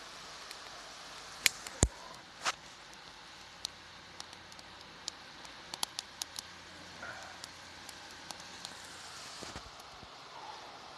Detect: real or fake fake